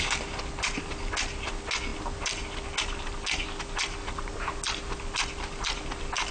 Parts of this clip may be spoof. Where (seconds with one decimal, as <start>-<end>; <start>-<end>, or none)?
none